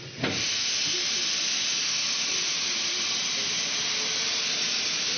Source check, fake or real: real